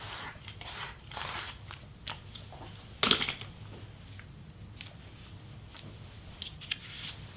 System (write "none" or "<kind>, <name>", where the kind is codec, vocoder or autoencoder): none